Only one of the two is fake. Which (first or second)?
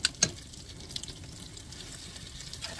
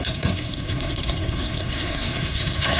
second